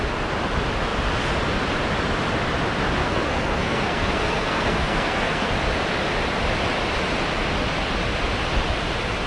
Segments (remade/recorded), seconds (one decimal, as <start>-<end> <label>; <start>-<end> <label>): 0.0-3.0 recorded; 3.0-5.5 remade; 5.5-9.3 recorded